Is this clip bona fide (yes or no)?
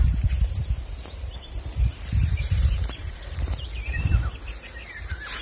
no